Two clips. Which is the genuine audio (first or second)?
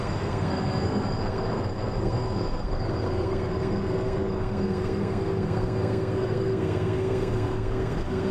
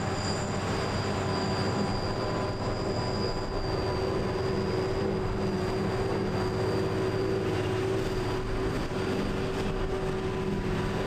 second